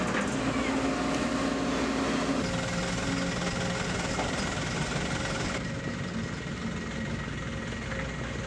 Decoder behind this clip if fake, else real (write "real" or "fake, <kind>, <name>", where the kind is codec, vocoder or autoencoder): real